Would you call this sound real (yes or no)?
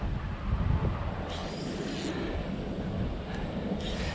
yes